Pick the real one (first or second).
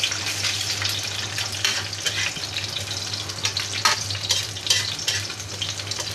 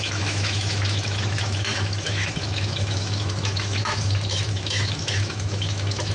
first